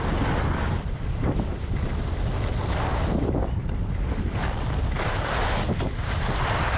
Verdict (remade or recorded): recorded